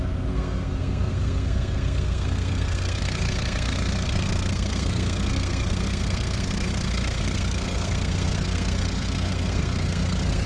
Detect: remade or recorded remade